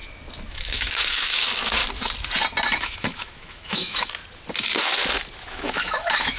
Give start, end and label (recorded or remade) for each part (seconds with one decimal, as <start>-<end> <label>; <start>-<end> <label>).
0.0-0.5 recorded; 0.5-1.8 remade; 1.8-2.8 recorded; 2.8-4.2 remade; 4.2-5.4 recorded; 5.4-6.4 remade